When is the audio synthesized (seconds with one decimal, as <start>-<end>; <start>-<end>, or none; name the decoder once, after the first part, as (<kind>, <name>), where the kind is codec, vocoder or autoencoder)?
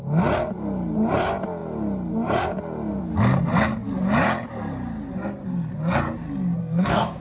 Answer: 6.6-7.2 (codec, SNAC)